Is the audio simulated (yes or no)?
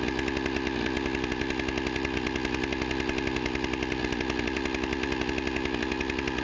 no